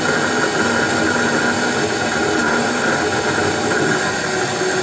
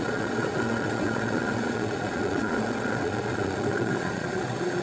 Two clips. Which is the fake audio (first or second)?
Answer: second